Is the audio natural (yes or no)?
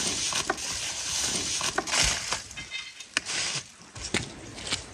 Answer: yes